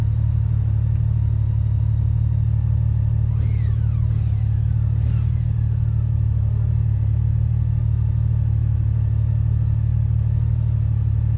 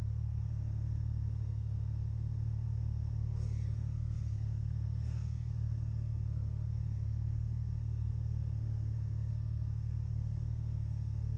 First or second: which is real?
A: first